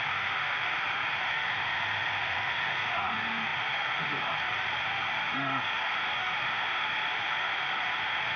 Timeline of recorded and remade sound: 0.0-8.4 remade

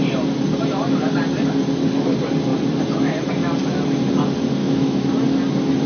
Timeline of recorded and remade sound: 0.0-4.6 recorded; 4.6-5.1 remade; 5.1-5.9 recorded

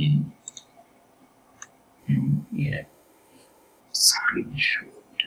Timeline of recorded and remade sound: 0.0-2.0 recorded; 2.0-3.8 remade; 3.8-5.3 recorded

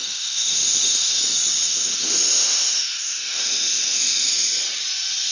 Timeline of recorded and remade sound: 0.0-1.2 remade; 1.2-1.6 recorded; 1.6-4.5 remade; 4.5-5.3 recorded

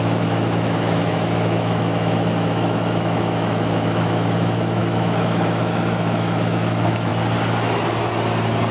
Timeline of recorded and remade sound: 0.0-7.1 remade; 7.1-8.7 recorded